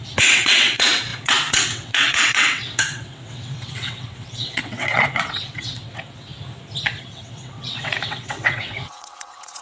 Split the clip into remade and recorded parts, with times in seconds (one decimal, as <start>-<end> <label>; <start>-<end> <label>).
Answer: 0.0-6.3 remade; 6.3-7.0 recorded; 7.0-9.6 remade